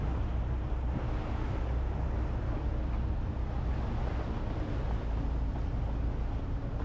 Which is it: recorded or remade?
recorded